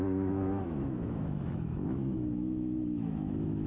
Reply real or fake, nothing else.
fake